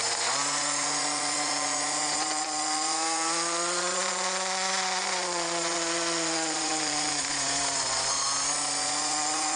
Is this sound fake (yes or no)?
yes